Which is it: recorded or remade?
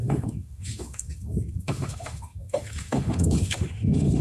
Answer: remade